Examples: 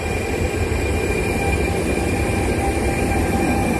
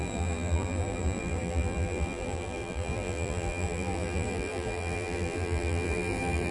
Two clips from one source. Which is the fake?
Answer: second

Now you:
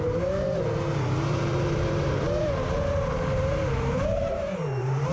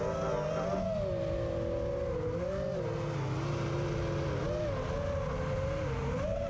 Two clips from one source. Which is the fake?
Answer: first